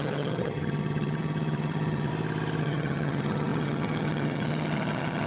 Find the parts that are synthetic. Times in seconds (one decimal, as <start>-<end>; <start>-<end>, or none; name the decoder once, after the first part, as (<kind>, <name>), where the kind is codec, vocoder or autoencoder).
0.0-2.1 (vocoder, HiFi-GAN); 2.6-5.3